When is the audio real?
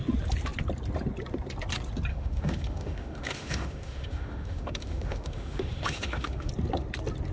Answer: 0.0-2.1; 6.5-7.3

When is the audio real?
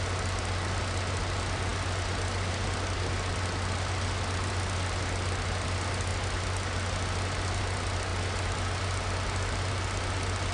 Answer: 0.0-10.5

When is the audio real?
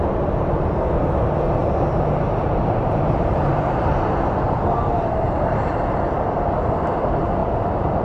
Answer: 0.0-1.6; 5.7-7.4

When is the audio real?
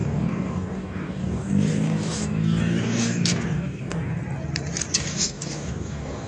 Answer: 4.2-4.9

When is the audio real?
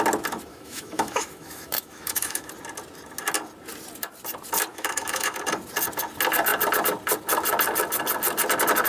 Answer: 0.0-0.5; 2.5-4.7; 5.4-8.9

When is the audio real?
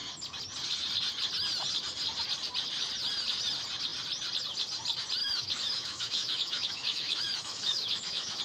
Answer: 0.0-5.2